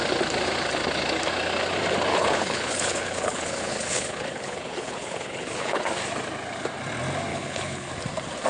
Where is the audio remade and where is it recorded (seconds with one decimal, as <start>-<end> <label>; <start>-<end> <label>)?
0.0-2.1 recorded; 2.1-5.8 remade; 5.8-7.3 recorded; 7.3-7.9 remade; 7.9-8.5 recorded